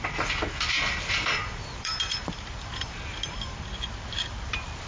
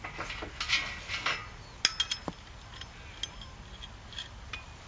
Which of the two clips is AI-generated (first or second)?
first